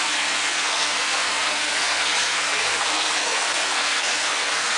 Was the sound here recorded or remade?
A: remade